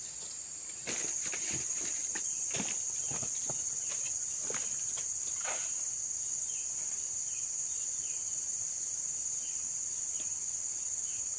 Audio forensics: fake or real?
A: real